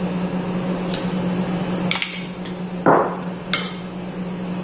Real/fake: real